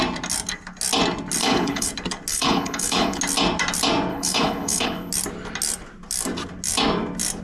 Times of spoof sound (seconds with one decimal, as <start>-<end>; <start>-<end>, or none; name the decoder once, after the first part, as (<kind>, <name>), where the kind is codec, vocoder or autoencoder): 1.4-1.9 (codec, HILCodec); 2.3-3.2; 4.1-5.1